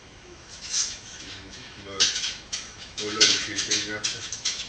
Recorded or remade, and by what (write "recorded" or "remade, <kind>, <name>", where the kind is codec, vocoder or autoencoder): remade, autoencoder, DAC-VAE